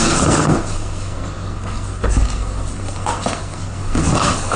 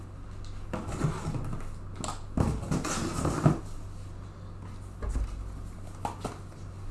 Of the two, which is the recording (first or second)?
second